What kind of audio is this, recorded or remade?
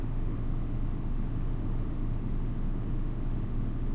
remade